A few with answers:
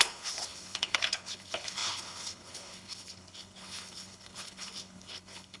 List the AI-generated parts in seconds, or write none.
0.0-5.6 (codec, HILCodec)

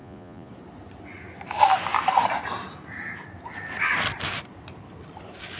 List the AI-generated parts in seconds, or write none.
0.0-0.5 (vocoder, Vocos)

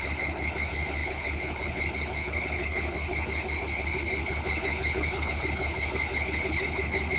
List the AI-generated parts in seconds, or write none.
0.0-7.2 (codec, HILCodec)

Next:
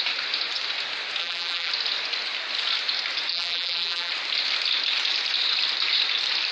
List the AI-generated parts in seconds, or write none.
1.2-1.7 (vocoder, BigVGAN v2); 3.3-4.1

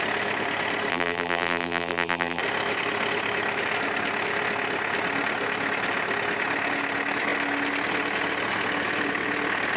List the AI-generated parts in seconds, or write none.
0.9-2.4 (vocoder, BigVGAN v2)

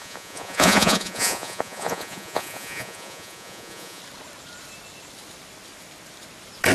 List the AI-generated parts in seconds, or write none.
0.0-4.0 (vocoder, Vocos)

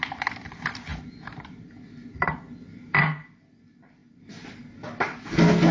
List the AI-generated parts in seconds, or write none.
none